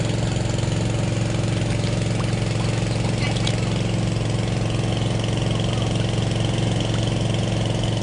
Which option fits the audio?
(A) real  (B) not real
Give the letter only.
A